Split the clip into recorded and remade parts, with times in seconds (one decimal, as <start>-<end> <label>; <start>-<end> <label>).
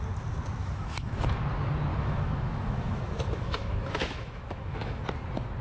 0.0-0.6 recorded; 0.6-1.4 remade; 1.4-1.9 recorded; 1.9-5.0 remade; 5.0-5.6 recorded